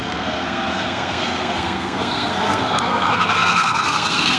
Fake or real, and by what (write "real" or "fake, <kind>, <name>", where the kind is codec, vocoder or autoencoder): fake, codec, SNAC